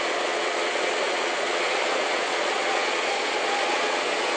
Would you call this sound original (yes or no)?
no